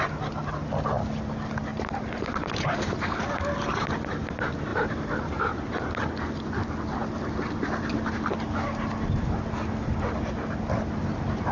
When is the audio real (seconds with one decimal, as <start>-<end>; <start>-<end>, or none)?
0.0-1.7; 2.9-4.7; 5.4-11.5